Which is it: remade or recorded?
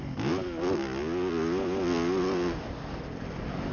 recorded